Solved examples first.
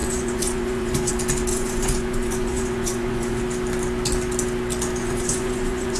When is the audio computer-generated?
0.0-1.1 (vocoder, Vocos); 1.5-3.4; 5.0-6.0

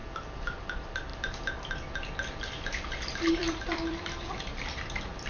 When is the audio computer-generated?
0.6-1.1 (vocoder, BigVGAN v2); 3.3-5.3

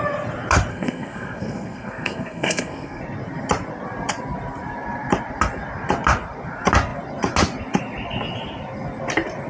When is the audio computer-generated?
0.7-3.0 (codec, SNAC)